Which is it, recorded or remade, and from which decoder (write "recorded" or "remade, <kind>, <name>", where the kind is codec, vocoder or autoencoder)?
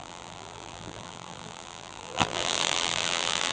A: remade, vocoder, BigVGAN v2